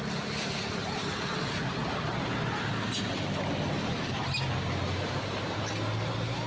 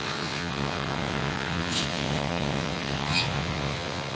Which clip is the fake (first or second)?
second